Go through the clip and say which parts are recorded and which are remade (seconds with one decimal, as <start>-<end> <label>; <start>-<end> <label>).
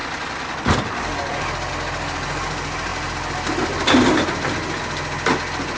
0.0-5.8 recorded